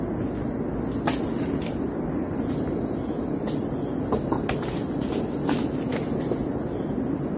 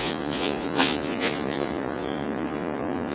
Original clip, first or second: first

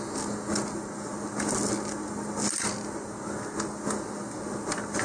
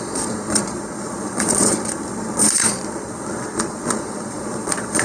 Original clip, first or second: first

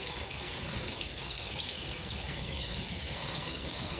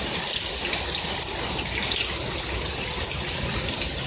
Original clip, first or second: second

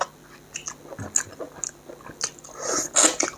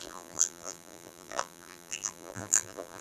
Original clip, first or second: first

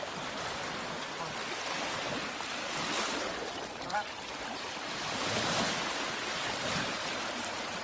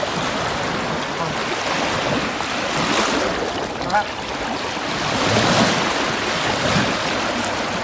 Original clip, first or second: second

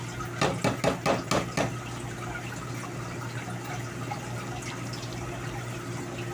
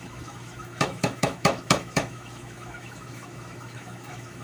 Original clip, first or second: first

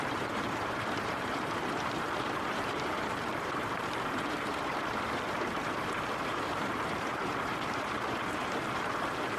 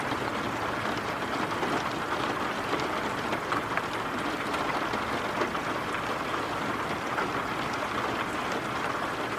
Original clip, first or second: second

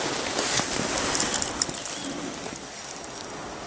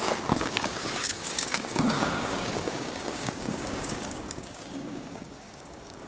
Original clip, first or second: first